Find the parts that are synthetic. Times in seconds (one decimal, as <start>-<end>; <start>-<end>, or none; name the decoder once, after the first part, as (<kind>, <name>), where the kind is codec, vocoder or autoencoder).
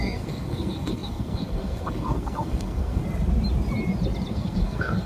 0.0-3.0 (codec, SNAC); 4.3-5.1